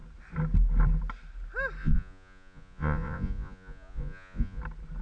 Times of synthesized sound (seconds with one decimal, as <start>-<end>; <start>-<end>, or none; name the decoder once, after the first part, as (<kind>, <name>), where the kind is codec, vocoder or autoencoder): 1.8-4.6 (vocoder, Vocos)